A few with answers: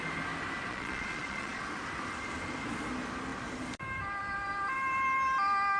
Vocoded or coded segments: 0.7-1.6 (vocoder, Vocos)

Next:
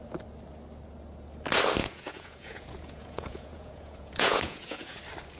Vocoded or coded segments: 1.8-5.0 (vocoder, Vocos)

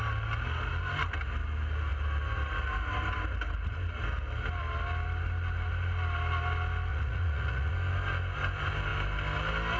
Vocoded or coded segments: 6.9-7.7 (vocoder, Vocos)

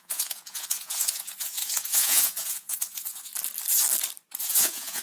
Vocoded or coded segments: 0.0-3.3 (vocoder, Vocos); 4.4-5.0